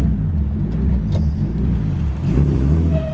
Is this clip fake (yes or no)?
no